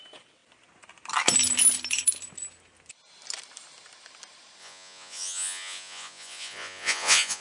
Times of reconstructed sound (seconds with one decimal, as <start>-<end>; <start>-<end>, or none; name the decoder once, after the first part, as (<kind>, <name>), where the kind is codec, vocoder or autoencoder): 4.6-7.4 (vocoder, Vocos)